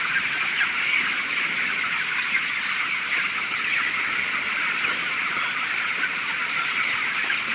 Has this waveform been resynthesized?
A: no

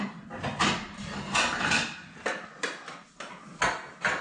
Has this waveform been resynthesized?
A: no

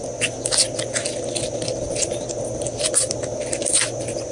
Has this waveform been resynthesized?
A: no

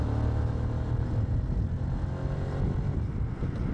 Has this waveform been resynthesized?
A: no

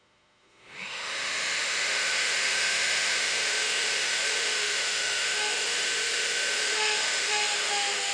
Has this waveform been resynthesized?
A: yes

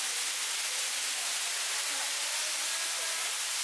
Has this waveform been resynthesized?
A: no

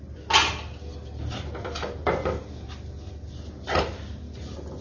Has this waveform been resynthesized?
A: no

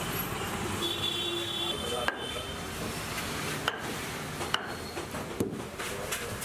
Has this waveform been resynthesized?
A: no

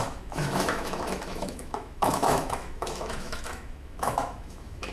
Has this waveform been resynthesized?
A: yes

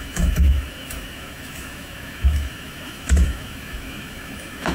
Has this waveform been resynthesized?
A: yes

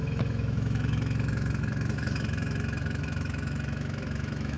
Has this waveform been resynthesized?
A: yes